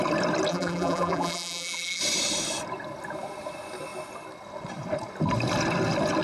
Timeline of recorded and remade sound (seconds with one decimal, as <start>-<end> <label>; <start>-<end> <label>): 0.0-0.5 recorded; 0.5-2.0 remade; 2.0-6.2 recorded